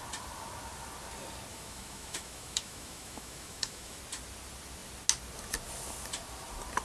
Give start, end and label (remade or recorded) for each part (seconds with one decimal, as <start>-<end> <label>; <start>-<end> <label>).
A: 0.0-1.5 recorded; 1.5-4.0 remade; 4.0-6.8 recorded